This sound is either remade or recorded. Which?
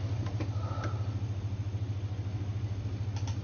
recorded